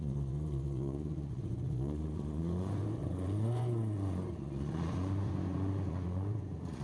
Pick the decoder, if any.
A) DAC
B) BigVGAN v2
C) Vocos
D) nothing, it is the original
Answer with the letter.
C